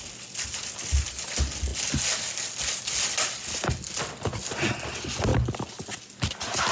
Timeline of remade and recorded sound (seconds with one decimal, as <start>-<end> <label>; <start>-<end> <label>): 0.0-6.7 recorded